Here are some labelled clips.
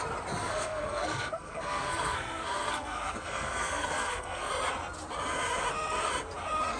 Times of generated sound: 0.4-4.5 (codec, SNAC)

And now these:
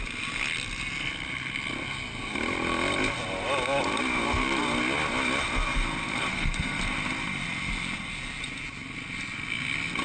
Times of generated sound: 6.3-6.8 (codec, SNAC)

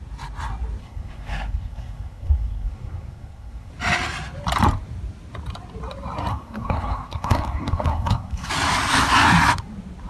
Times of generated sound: 0.8-3.7 (codec, SNAC); 6.3-8.5

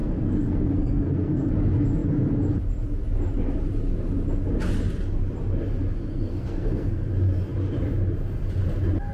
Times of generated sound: 0.0-1.5 (codec, SNAC); 6.1-7.1

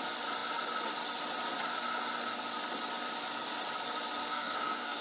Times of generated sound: 4.2-5.0 (codec, SNAC)